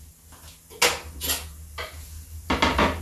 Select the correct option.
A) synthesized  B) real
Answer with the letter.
B